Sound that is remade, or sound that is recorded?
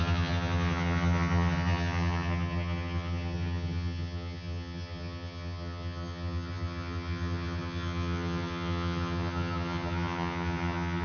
remade